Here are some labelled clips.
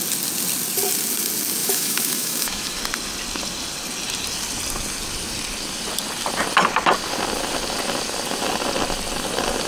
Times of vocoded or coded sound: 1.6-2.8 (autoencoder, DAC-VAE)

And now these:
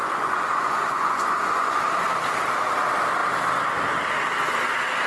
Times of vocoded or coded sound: 0.0-1.8 (vocoder, Vocos)

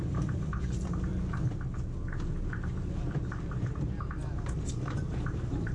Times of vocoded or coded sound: 0.0-1.1 (vocoder, BigVGAN v2); 4.5-5.7